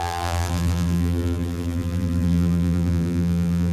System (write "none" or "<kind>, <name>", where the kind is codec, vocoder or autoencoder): vocoder, BigVGAN v2